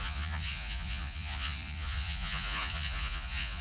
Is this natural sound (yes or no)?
no